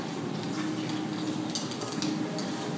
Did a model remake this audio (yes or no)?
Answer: no